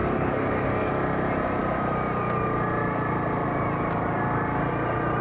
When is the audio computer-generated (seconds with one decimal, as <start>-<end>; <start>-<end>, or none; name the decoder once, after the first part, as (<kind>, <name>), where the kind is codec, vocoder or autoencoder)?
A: 0.0-0.9 (codec, DAC)